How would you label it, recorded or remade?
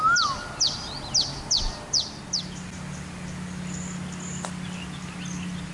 recorded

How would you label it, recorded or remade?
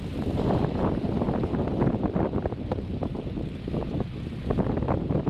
recorded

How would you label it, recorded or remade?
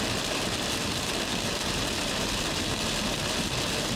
remade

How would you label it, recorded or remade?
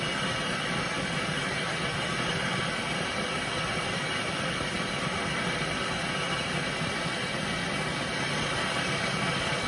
recorded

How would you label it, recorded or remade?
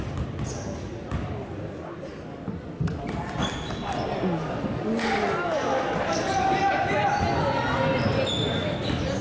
recorded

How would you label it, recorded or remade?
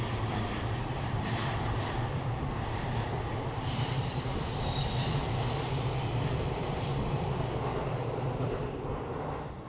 remade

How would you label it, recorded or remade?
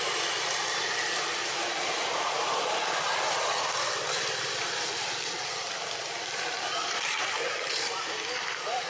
remade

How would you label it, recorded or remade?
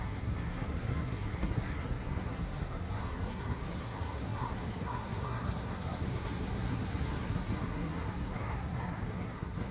remade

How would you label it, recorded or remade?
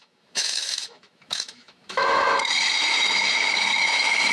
remade